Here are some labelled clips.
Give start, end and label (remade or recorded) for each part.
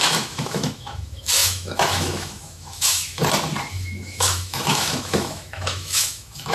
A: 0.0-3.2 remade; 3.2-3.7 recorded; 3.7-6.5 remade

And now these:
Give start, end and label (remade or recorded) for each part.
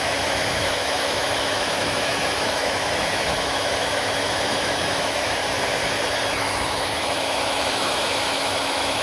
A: 0.0-5.4 remade; 5.4-6.4 recorded; 6.4-9.0 remade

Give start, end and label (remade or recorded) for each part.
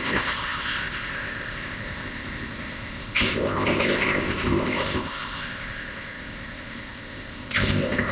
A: 0.0-8.1 remade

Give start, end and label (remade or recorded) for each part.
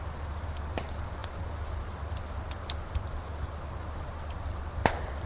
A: 0.0-5.3 recorded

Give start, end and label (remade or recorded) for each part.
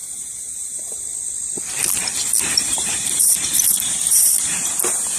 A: 0.0-1.0 remade; 1.0-2.6 recorded; 2.6-4.8 remade; 4.8-5.2 recorded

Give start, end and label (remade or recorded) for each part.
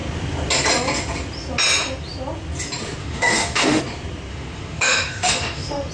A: 0.0-3.0 recorded; 3.0-3.8 remade; 3.8-4.3 recorded; 4.3-5.9 remade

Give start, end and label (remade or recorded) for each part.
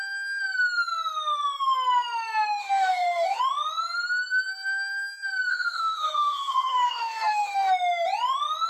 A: 0.0-2.6 recorded; 2.6-3.4 remade; 3.4-5.5 recorded; 5.5-7.7 remade; 7.7-8.7 recorded